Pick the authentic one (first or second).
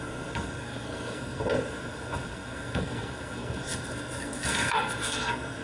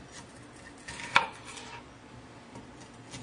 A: second